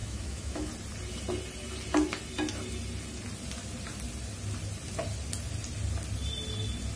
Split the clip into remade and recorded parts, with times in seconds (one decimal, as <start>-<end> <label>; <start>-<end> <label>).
0.0-0.7 remade; 0.7-7.0 recorded